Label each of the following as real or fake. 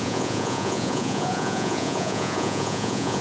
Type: fake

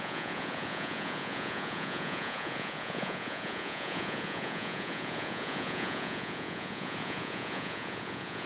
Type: fake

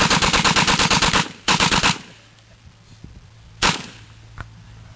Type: real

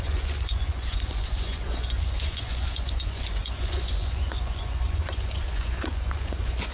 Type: fake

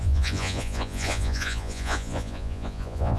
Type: fake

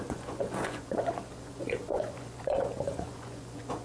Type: fake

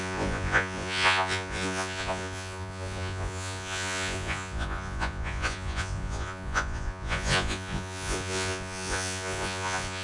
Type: fake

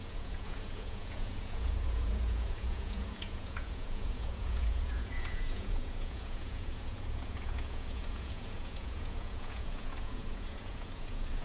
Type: fake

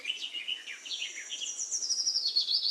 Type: fake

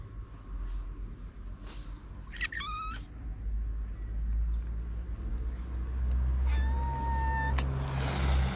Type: real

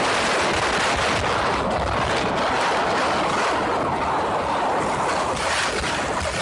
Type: real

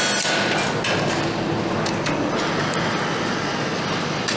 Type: real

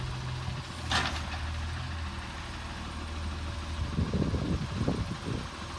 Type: real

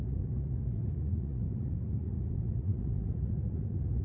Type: fake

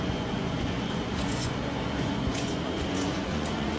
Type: fake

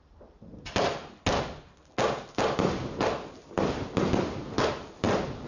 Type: real